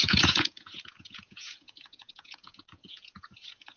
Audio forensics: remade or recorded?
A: remade